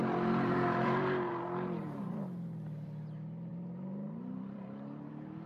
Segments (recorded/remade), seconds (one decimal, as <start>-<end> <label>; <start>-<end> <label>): 0.0-1.4 remade; 1.4-3.5 recorded; 3.5-5.1 remade; 5.1-5.5 recorded